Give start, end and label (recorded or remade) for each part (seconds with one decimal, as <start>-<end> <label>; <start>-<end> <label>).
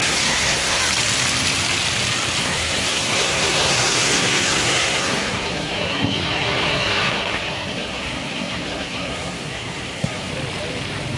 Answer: 0.0-0.8 remade; 0.8-2.4 recorded; 2.4-10.3 remade; 10.3-11.2 recorded